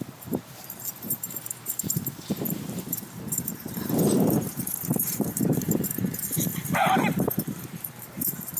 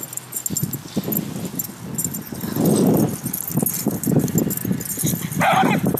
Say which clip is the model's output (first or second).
first